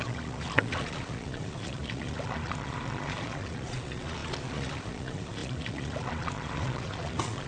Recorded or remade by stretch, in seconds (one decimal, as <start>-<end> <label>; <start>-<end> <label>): 0.0-7.5 remade